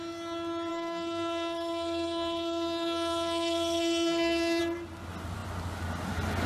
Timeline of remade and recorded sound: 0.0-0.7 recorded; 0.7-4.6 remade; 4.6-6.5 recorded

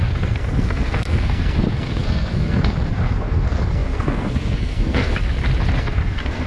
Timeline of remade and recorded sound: 0.0-5.1 remade; 5.1-5.8 recorded; 5.8-6.5 remade

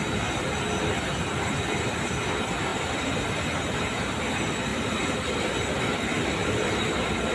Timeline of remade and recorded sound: 0.0-6.4 recorded; 6.4-7.3 remade

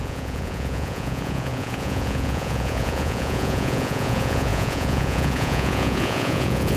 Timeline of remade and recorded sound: 0.0-6.8 remade

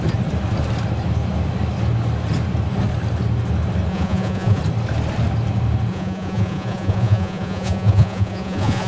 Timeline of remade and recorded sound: 0.0-3.9 recorded; 3.9-4.6 remade; 4.6-5.9 recorded; 5.9-8.9 remade

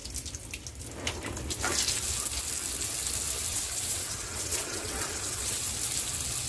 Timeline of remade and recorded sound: 0.0-3.5 recorded; 3.5-5.6 remade; 5.6-6.5 recorded

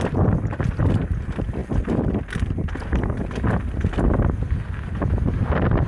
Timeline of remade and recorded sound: 0.0-5.9 recorded